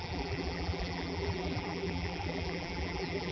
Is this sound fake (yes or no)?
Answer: yes